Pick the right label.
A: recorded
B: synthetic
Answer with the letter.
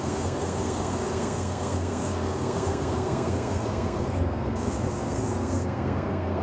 B